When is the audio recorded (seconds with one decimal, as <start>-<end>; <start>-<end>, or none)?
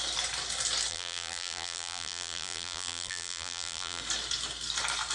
0.0-0.9; 4.0-5.1